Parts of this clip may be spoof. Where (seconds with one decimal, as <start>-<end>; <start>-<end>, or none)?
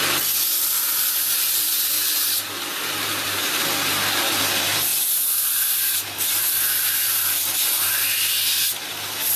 none